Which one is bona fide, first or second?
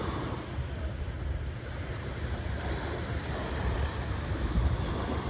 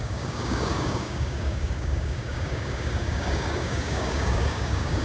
first